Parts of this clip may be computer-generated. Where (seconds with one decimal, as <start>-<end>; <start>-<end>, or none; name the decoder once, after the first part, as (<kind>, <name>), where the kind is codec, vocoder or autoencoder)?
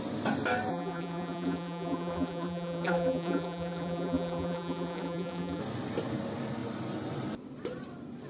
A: 0.7-5.6 (vocoder, BigVGAN v2)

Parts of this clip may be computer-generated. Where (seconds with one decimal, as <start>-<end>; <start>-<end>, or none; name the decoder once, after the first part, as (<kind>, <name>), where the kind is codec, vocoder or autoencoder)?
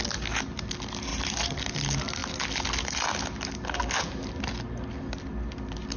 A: 1.1-1.7 (vocoder, BigVGAN v2)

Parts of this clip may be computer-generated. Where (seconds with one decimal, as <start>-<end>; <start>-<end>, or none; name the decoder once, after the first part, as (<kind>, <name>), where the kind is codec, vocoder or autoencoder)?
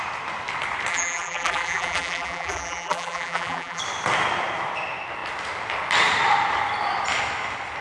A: 0.9-3.8 (vocoder, BigVGAN v2)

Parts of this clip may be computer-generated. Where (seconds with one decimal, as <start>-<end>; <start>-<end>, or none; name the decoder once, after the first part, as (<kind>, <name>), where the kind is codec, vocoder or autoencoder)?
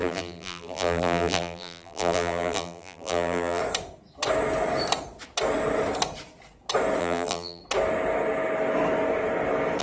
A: 0.0-3.6 (vocoder, BigVGAN v2); 7.0-7.6